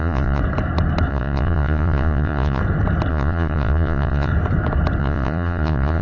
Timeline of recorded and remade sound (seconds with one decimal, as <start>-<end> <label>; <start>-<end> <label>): 0.0-0.4 remade; 0.4-1.1 recorded; 1.1-2.6 remade; 2.6-3.1 recorded; 3.1-4.3 remade; 4.3-5.0 recorded; 5.0-6.0 remade